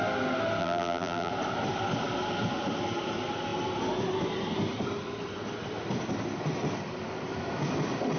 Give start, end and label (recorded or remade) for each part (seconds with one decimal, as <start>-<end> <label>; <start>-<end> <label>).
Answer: 0.0-0.6 recorded; 0.6-1.3 remade; 1.3-8.2 recorded